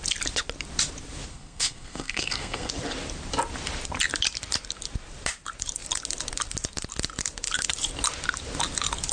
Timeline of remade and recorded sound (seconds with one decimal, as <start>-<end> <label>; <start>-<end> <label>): 0.0-1.3 recorded; 1.3-2.7 remade; 2.7-9.1 recorded

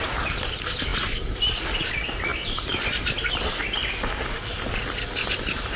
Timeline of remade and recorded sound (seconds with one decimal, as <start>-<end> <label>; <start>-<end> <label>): 0.0-5.8 recorded